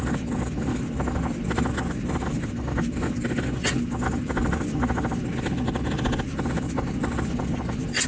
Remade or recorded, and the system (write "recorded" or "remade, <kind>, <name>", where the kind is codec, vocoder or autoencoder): recorded